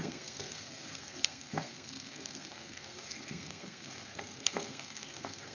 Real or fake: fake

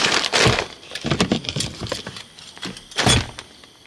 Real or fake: real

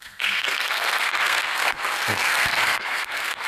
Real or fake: fake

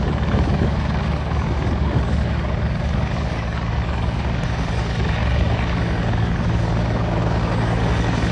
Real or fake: fake